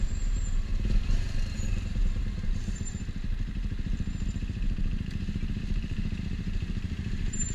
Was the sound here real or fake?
fake